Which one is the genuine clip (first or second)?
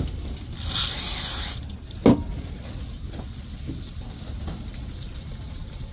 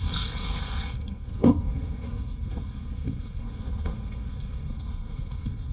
first